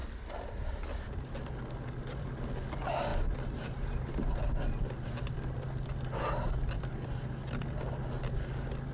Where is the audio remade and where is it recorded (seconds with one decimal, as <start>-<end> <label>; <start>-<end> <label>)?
0.0-8.9 recorded